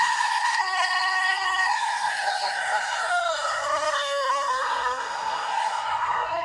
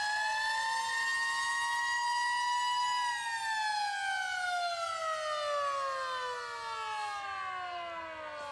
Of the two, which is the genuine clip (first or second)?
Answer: second